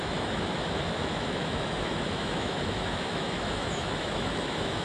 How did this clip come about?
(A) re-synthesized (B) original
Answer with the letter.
A